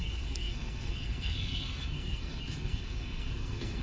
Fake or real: fake